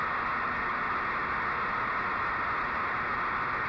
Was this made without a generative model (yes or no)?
yes